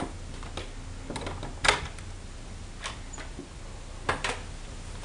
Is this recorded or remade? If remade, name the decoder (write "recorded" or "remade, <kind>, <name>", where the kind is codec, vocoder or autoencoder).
recorded